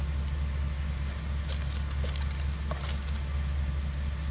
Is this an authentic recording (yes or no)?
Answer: yes